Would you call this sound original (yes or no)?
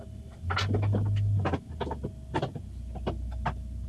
yes